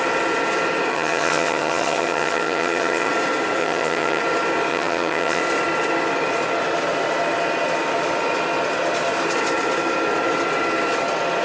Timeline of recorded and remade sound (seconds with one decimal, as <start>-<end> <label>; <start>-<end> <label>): 0.0-0.9 recorded; 0.9-3.1 remade; 3.1-3.6 recorded; 3.6-4.2 remade; 4.2-4.7 recorded; 4.7-5.4 remade; 5.4-11.4 recorded